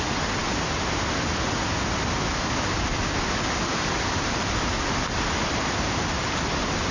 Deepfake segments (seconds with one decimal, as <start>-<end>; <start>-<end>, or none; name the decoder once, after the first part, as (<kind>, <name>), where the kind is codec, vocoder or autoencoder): none